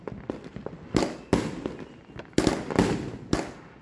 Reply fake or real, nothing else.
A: real